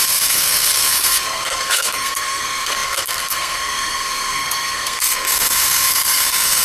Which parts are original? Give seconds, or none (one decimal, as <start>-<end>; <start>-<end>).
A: none